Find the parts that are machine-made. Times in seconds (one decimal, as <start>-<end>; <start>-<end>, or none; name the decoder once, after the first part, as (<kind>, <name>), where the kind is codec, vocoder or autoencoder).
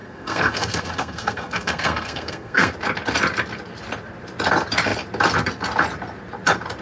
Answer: 0.0-2.7 (codec, SNAC)